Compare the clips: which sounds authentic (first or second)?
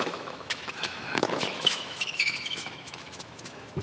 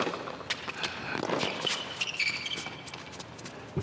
second